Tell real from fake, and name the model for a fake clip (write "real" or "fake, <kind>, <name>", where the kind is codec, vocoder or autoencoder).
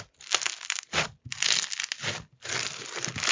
real